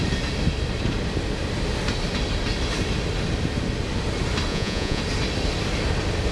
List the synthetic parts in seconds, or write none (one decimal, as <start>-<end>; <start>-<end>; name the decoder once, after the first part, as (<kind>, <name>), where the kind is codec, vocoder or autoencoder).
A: 4.5-5.0 (vocoder, Vocos)